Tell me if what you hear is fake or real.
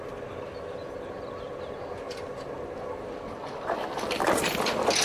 real